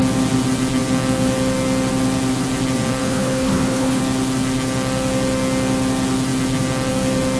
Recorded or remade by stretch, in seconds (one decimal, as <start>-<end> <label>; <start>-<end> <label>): 0.0-3.0 recorded; 3.0-4.0 remade; 4.0-7.4 recorded